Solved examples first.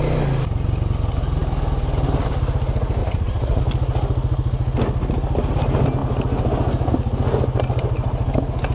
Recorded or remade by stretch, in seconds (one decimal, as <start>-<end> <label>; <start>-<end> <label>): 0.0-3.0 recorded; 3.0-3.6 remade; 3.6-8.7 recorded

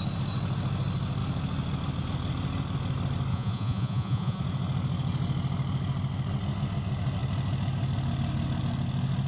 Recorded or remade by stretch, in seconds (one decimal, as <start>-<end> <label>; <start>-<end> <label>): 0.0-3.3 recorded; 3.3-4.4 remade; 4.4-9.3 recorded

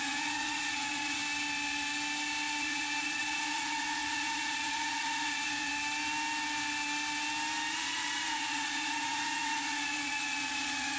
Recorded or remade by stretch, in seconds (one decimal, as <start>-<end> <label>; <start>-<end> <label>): 0.0-1.2 remade; 1.2-2.6 recorded; 2.6-5.7 remade; 5.7-7.7 recorded; 7.7-11.0 remade

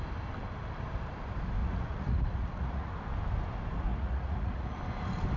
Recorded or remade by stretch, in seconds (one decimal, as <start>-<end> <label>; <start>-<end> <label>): 0.0-1.6 recorded; 1.6-2.9 remade; 2.9-3.9 recorded; 3.9-4.8 remade; 4.8-5.4 recorded

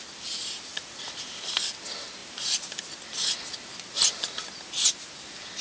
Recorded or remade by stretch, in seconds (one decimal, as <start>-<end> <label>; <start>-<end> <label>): 0.0-0.7 recorded; 0.7-1.3 remade; 1.3-5.6 recorded

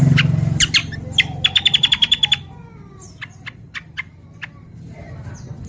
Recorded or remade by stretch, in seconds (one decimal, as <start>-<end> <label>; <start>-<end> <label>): 0.0-5.7 recorded